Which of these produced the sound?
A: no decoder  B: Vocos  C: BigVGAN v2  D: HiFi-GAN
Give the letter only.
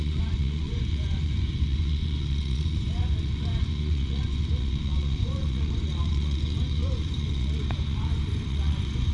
B